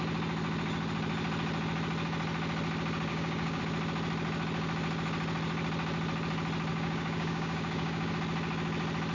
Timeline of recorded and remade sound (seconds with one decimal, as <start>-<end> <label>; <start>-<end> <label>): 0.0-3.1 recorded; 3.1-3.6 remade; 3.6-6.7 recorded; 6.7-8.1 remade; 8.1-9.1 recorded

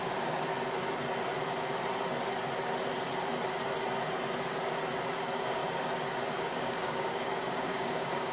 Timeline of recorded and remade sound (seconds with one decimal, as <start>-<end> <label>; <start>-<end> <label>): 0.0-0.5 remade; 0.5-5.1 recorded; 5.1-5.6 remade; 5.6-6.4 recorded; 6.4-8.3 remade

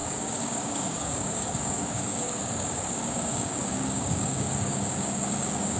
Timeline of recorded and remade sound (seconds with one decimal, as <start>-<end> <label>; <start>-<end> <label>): 0.0-5.8 remade

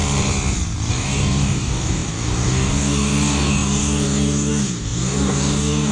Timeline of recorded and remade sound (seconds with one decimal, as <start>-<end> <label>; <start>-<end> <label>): 0.0-0.9 recorded; 0.9-5.9 remade

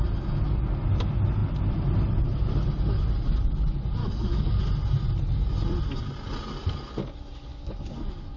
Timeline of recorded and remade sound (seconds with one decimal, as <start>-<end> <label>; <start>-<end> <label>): 0.0-4.0 recorded; 4.0-4.6 remade; 4.6-7.5 recorded; 7.5-8.4 remade

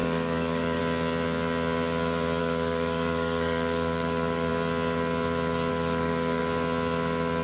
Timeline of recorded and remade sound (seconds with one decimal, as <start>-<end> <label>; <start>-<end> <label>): 0.0-0.8 remade; 0.8-2.4 recorded; 2.4-4.5 remade; 4.5-5.7 recorded; 5.7-6.4 remade; 6.4-7.4 recorded

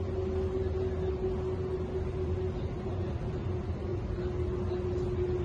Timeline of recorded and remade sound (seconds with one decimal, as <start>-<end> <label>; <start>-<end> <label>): 0.0-5.4 recorded